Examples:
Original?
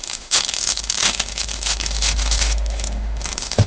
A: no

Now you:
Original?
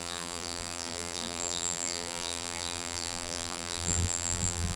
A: no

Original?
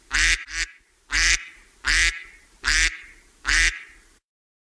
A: yes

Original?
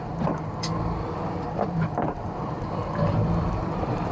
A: no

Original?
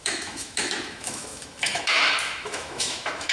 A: no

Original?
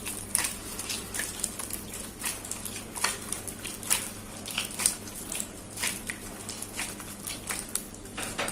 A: yes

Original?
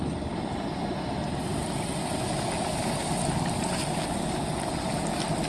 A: yes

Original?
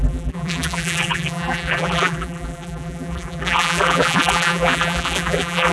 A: no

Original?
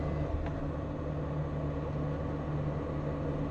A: yes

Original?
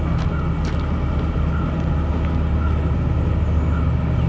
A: yes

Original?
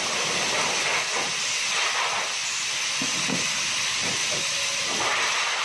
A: yes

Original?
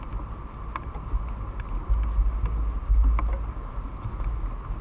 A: yes